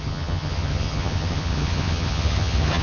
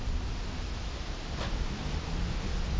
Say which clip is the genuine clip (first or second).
second